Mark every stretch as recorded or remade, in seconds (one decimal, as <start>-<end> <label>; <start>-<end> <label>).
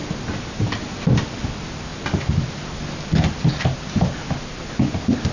0.0-5.3 recorded